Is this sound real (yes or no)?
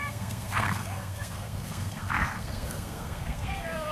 no